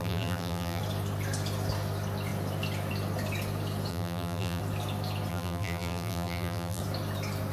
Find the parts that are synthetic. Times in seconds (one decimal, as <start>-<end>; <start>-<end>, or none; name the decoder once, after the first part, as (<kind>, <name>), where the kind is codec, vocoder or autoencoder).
0.0-0.8 (vocoder, BigVGAN v2); 3.9-4.6; 5.3-6.8